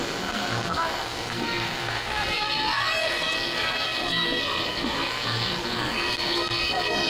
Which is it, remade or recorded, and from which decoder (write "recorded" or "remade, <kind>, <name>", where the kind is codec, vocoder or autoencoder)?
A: remade, codec, SNAC